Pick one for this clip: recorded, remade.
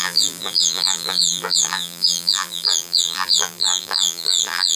remade